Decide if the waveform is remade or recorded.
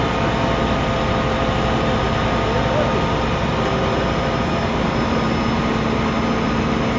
recorded